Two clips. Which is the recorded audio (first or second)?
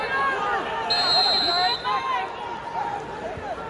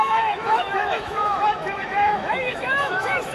first